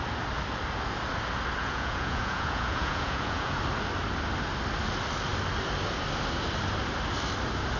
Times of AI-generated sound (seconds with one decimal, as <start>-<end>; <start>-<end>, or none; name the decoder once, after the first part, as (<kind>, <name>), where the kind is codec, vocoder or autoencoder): 1.6-3.6 (vocoder, Vocos)